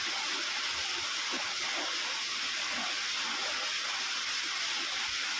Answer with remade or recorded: recorded